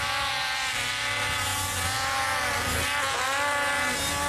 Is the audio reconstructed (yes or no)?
yes